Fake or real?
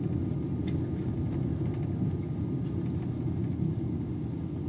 real